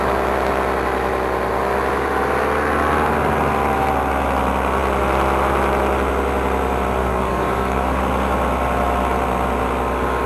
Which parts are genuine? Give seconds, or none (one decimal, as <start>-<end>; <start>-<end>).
0.0-7.0; 8.0-10.3